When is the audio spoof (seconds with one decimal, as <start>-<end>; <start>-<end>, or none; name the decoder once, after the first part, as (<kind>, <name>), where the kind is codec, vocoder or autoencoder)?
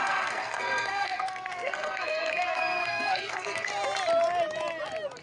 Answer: 0.0-3.7 (codec, SNAC)